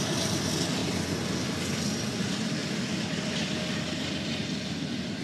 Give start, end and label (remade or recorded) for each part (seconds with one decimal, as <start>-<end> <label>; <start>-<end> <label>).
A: 0.0-5.2 recorded